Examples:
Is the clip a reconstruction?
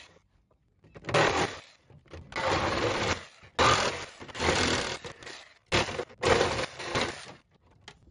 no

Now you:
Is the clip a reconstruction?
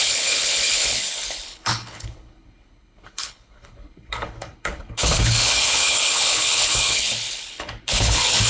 yes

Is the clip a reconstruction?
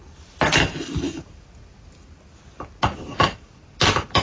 no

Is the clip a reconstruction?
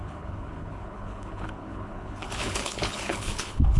yes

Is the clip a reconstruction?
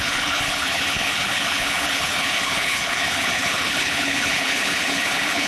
yes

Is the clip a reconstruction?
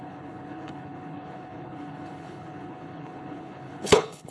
yes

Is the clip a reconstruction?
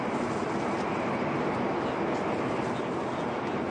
no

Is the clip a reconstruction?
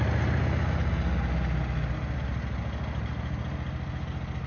no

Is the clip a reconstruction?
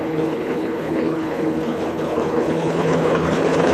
yes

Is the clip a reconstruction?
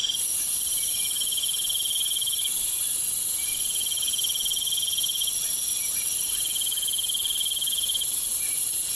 no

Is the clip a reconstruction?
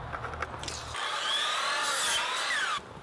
no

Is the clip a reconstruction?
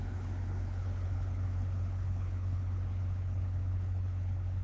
yes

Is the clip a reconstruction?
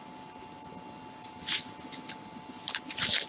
no